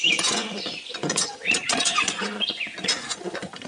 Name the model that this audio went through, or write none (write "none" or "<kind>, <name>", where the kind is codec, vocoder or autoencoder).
vocoder, Vocos